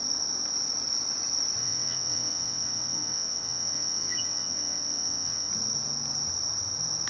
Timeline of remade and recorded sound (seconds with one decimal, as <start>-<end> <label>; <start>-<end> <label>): 0.0-1.6 recorded; 1.6-5.5 remade; 5.5-7.1 recorded